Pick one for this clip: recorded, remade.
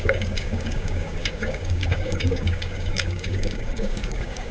remade